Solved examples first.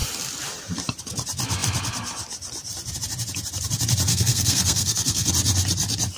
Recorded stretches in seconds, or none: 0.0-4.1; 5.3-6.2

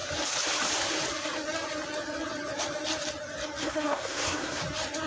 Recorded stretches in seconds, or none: 0.0-3.6; 4.6-5.1

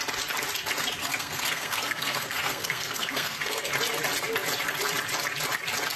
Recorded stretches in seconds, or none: 0.0-1.0; 3.7-6.0

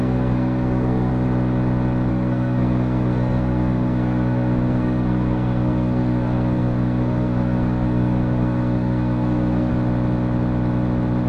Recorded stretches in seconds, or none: 1.1-2.1; 9.7-11.3